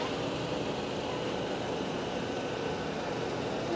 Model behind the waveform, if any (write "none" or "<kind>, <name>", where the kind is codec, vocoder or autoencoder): none